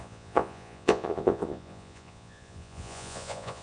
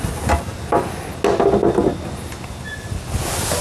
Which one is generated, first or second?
first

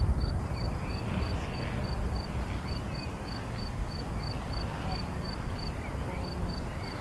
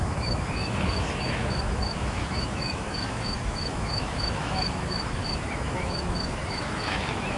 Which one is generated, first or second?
second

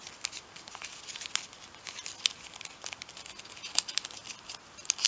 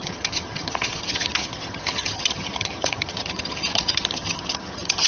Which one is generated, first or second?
second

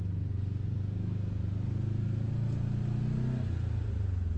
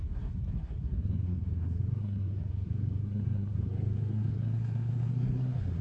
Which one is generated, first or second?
second